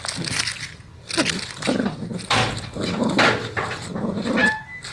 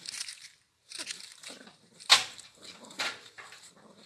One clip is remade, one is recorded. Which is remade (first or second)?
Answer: second